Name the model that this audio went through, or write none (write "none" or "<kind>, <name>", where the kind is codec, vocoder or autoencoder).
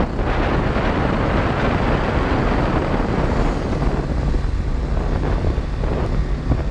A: none